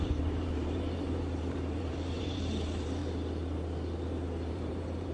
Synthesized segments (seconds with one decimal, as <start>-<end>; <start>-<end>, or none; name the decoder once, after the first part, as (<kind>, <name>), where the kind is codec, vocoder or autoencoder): 0.0-3.0 (vocoder, BigVGAN v2); 4.5-5.1